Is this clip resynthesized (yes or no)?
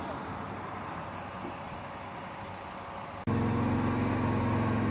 no